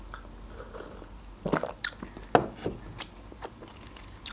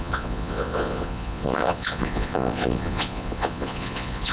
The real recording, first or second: first